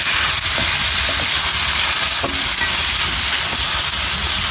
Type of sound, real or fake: real